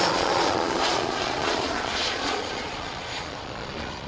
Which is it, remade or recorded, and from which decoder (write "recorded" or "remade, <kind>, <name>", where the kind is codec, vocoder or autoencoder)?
remade, vocoder, Vocos